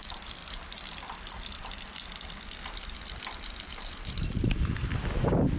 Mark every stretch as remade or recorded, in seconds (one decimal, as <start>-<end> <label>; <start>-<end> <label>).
0.0-0.4 remade; 0.4-3.6 recorded; 3.6-4.9 remade; 4.9-5.6 recorded